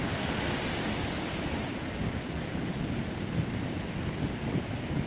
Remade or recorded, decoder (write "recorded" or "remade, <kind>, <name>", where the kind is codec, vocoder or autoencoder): recorded